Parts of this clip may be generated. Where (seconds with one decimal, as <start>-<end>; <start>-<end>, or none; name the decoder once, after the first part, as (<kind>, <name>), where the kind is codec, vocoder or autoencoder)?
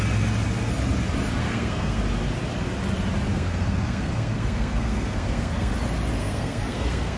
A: 1.4-2.0 (codec, SNAC); 3.3-5.7; 6.2-7.2